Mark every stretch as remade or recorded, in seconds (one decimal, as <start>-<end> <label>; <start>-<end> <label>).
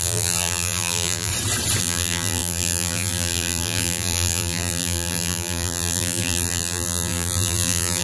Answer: 0.0-1.3 remade; 1.3-1.8 recorded; 1.8-8.0 remade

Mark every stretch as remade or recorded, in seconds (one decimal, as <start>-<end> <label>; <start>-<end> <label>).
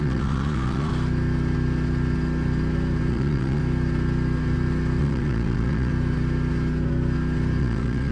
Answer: 0.0-0.9 remade; 0.9-3.1 recorded; 3.1-3.6 remade; 3.6-5.0 recorded; 5.0-5.9 remade; 5.9-7.6 recorded; 7.6-8.1 remade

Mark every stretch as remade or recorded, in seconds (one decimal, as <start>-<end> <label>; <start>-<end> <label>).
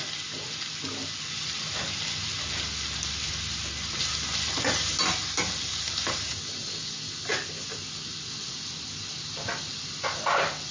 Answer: 0.0-10.7 recorded